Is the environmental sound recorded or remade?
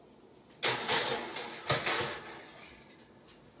recorded